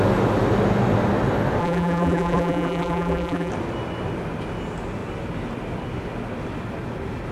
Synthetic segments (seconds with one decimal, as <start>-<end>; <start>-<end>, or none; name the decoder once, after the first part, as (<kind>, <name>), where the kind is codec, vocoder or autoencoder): 1.6-3.5 (vocoder, BigVGAN v2)